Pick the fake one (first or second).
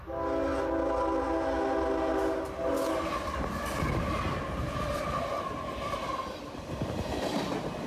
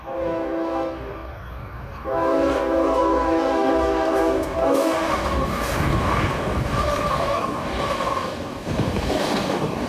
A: second